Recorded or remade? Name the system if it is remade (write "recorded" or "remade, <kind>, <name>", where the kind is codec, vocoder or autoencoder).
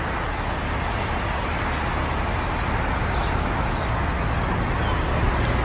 recorded